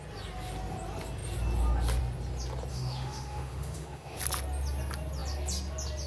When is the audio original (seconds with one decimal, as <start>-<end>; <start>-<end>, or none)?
0.0-2.7; 4.2-6.1